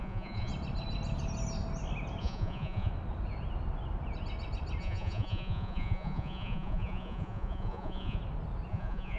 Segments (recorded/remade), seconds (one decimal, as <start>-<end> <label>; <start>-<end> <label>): 0.0-0.5 remade; 0.5-2.2 recorded; 2.2-2.9 remade; 2.9-4.8 recorded; 4.8-8.2 remade; 8.2-8.7 recorded; 8.7-9.2 remade